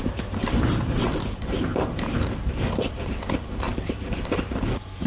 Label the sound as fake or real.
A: fake